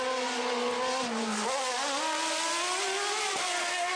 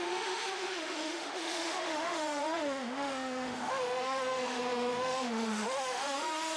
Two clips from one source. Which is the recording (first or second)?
first